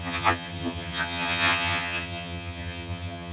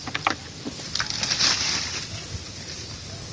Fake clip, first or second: first